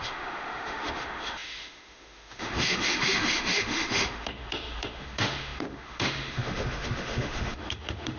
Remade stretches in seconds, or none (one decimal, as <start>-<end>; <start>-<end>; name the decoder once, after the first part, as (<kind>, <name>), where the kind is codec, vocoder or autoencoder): 0.0-8.2 (autoencoder, DAC-VAE)